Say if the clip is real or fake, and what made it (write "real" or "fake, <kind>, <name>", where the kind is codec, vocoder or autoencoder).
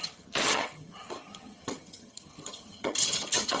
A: fake, vocoder, HiFi-GAN